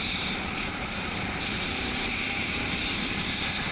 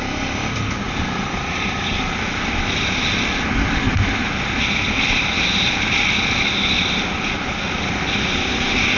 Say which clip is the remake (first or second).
first